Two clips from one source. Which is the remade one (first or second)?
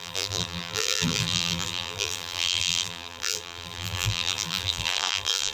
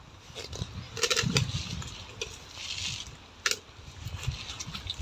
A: first